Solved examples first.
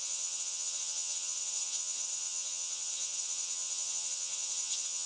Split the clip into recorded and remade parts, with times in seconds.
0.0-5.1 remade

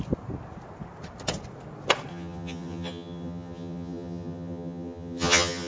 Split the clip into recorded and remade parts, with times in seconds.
0.0-2.1 recorded; 2.1-5.7 remade

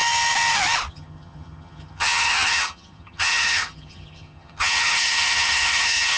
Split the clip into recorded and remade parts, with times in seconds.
0.0-0.9 recorded; 0.9-6.2 remade

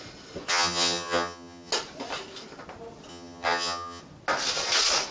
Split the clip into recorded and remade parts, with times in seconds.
0.0-0.5 recorded; 0.5-1.7 remade; 1.7-3.1 recorded; 3.1-4.0 remade; 4.0-5.1 recorded

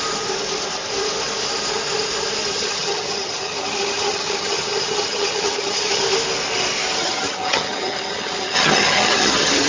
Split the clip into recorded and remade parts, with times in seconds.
0.0-2.4 recorded; 2.4-6.0 remade; 6.0-7.0 recorded; 7.0-9.7 remade

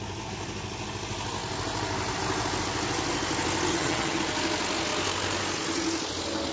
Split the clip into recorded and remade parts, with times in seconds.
0.0-3.7 recorded; 3.7-4.2 remade; 4.2-6.5 recorded

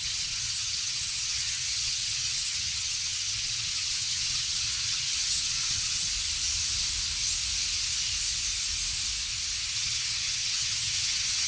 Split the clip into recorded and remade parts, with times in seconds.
0.0-6.1 remade; 6.1-9.7 recorded; 9.7-11.5 remade

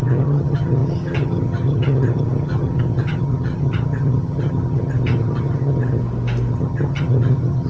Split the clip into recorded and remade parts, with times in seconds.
0.0-6.0 remade; 6.0-6.5 recorded; 6.5-7.7 remade